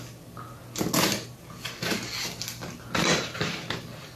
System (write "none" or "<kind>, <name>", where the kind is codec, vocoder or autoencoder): none